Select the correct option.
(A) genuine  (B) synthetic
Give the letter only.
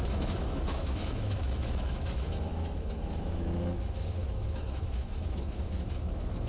B